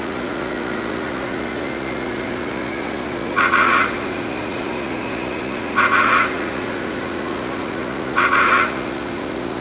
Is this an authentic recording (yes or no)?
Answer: no